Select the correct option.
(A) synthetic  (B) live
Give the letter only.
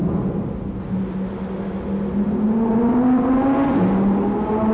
B